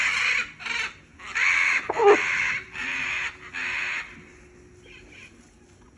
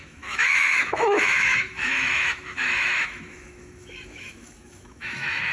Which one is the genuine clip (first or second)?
first